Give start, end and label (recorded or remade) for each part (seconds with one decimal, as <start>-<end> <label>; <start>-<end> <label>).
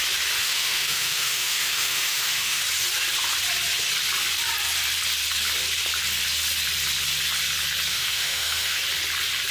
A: 0.0-0.4 recorded; 0.4-2.6 remade; 2.6-7.9 recorded; 7.9-8.8 remade; 8.8-9.5 recorded